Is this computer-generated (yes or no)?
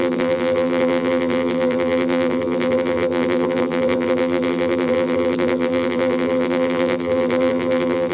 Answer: yes